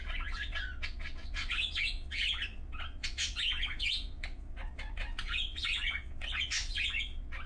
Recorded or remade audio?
remade